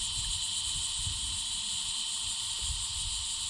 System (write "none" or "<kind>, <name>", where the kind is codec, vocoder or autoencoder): none